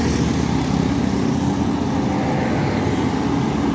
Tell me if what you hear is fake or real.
real